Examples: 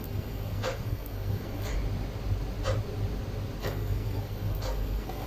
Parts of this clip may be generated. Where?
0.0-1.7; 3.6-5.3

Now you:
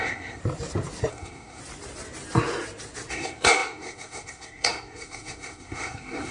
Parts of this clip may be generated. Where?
0.0-0.4; 1.1-1.6; 3.1-6.3

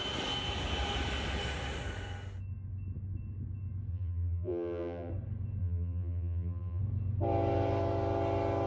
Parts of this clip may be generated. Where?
3.9-5.1; 5.6-6.8

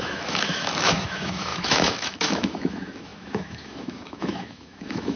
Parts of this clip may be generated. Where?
0.0-5.2

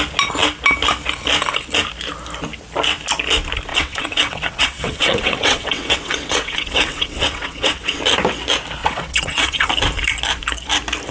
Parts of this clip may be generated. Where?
3.7-8.0; 8.8-9.7

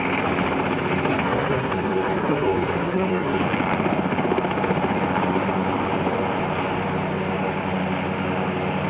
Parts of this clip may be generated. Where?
1.1-3.4

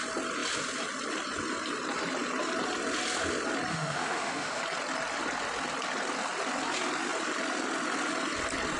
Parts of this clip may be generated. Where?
3.7-4.6